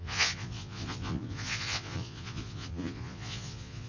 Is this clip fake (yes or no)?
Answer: yes